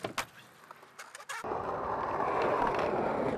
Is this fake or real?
real